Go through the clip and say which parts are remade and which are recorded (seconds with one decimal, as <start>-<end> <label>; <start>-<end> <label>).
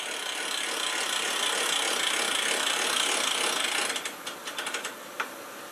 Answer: 0.0-5.7 recorded